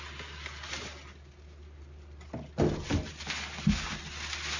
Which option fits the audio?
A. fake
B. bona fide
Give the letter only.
B